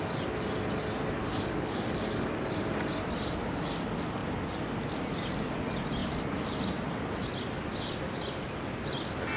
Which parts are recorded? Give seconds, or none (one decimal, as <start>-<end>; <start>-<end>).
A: 0.0-1.2; 2.3-9.4